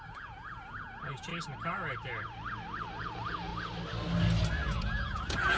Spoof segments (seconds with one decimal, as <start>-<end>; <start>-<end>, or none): 0.0-1.3; 3.0-3.5; 4.5-5.6